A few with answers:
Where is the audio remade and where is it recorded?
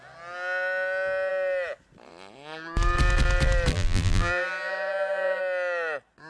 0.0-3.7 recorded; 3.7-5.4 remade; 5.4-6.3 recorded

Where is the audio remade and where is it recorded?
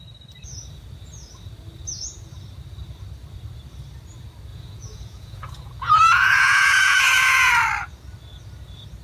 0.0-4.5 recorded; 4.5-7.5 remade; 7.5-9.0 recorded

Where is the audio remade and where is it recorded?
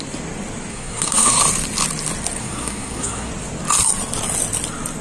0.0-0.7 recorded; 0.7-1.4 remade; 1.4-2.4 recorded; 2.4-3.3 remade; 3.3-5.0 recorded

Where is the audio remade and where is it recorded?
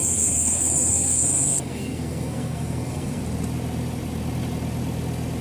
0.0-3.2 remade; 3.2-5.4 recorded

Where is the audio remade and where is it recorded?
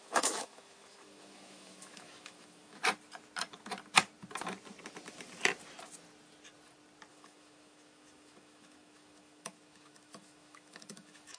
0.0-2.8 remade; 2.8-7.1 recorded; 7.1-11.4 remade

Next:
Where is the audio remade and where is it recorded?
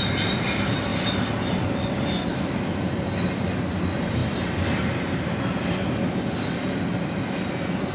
0.0-2.3 recorded; 2.3-2.9 remade; 2.9-7.9 recorded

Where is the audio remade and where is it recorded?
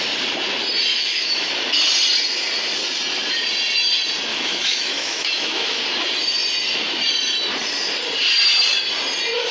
0.0-0.9 recorded; 0.9-1.5 remade; 1.5-4.3 recorded; 4.3-5.8 remade; 5.8-9.5 recorded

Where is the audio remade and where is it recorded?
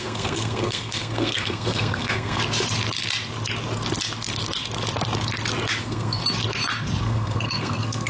0.0-2.4 remade; 2.4-5.8 recorded; 5.8-6.2 remade; 6.2-7.0 recorded; 7.0-8.1 remade